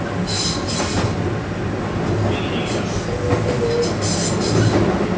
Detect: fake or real real